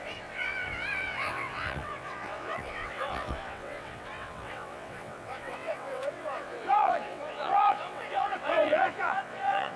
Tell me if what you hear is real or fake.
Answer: fake